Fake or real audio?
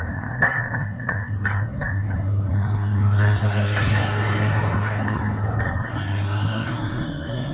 fake